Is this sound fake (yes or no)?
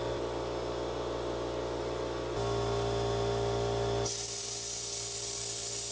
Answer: no